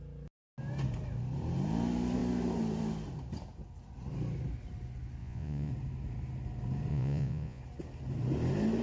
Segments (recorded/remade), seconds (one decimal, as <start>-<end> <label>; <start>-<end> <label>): 0.0-5.2 recorded; 5.2-5.7 remade; 5.7-6.9 recorded; 6.9-7.6 remade; 7.6-8.8 recorded

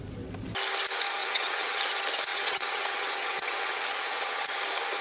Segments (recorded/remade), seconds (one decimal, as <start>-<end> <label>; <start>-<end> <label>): 0.0-1.2 recorded; 1.2-1.8 remade; 1.8-2.3 recorded; 2.3-4.5 remade; 4.5-5.0 recorded

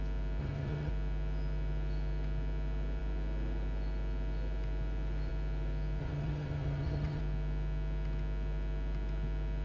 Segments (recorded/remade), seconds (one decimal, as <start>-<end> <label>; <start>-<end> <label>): 0.0-0.4 recorded; 0.4-0.9 remade; 0.9-6.0 recorded; 6.0-7.2 remade; 7.2-9.6 recorded

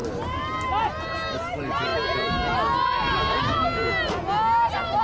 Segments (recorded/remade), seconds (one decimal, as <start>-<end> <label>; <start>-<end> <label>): 0.0-5.0 recorded

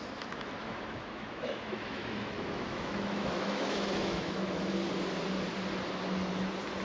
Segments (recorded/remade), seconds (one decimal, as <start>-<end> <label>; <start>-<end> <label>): 0.0-0.6 recorded; 0.6-4.7 remade; 4.7-6.8 recorded

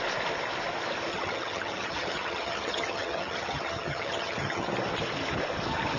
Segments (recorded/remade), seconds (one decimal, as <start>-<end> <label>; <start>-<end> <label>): 0.0-1.1 recorded; 1.1-4.7 remade; 4.7-6.0 recorded

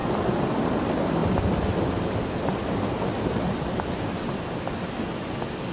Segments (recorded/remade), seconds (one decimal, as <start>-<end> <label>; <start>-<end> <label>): 0.0-5.7 recorded

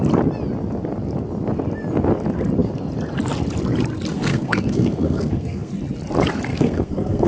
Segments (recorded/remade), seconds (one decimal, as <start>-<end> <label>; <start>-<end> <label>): 0.0-4.1 recorded; 4.1-5.7 remade; 5.7-6.5 recorded; 6.5-7.3 remade